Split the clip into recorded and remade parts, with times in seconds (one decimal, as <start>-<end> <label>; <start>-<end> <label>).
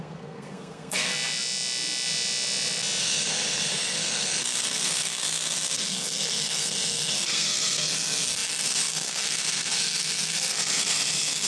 0.0-1.1 remade; 1.1-3.0 recorded; 3.0-11.5 remade